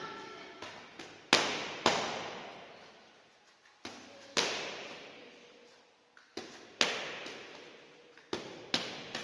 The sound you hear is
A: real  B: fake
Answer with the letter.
A